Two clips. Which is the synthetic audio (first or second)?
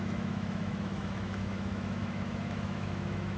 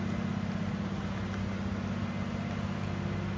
first